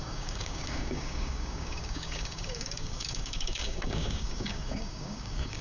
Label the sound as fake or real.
fake